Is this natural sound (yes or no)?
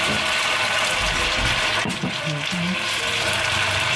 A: yes